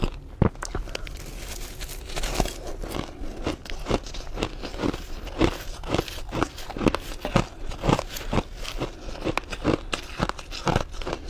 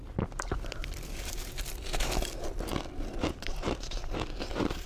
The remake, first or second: second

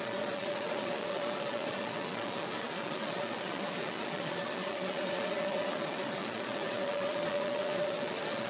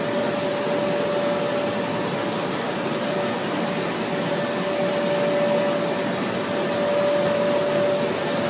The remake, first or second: first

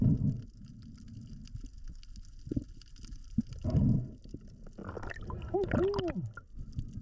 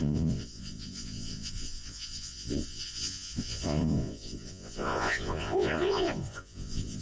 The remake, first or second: second